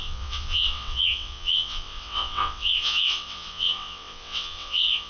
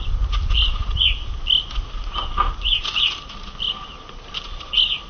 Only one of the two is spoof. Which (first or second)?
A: first